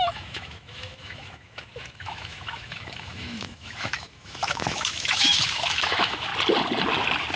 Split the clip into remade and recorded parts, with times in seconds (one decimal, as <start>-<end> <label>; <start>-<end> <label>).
0.0-6.3 remade; 6.3-7.4 recorded